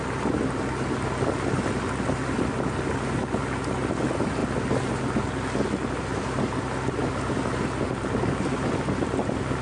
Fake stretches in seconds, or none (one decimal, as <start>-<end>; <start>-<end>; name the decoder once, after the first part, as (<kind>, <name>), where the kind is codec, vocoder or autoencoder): none